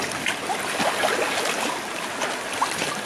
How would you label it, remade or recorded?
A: recorded